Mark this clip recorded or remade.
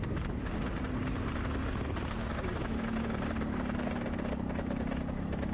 recorded